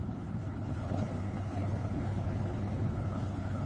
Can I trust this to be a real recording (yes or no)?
no